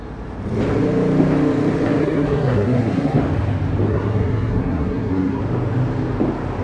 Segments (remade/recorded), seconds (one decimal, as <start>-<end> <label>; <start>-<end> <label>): 0.0-2.0 recorded; 2.0-3.2 remade; 3.2-3.9 recorded; 3.9-5.4 remade; 5.4-6.6 recorded